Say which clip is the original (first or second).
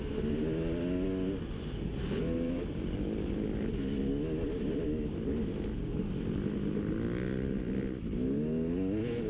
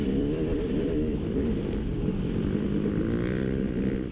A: first